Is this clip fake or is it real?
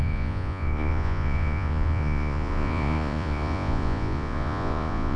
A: fake